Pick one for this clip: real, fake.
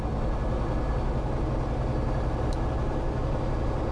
real